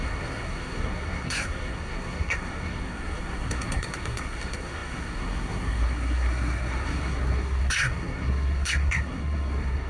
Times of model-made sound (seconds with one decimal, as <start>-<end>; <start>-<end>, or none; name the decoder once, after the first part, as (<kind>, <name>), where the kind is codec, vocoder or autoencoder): 0.0-9.9 (codec, SNAC)